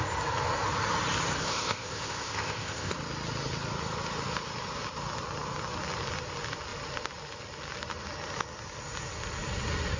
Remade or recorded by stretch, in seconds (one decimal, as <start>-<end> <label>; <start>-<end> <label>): 0.0-1.4 recorded; 1.4-2.9 remade; 2.9-10.0 recorded